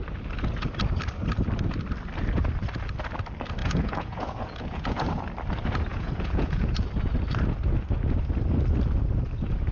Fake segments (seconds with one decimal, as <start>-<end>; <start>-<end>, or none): 3.6-5.2; 5.9-6.7